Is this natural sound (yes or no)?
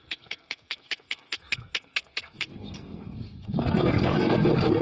no